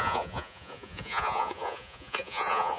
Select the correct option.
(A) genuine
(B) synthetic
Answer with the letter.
B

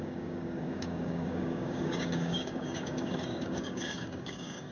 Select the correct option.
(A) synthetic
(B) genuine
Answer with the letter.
A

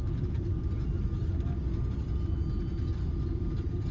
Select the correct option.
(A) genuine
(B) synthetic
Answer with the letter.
A